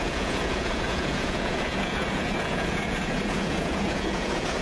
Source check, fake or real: fake